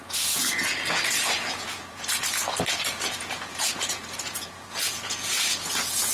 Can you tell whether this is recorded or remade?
remade